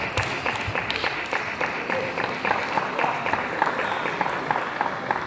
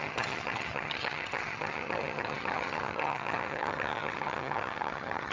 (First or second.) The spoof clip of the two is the second